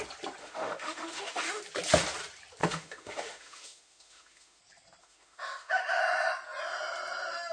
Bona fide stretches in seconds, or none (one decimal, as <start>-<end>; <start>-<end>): 0.0-0.4; 1.6-2.6; 4.6-5.0; 6.0-7.5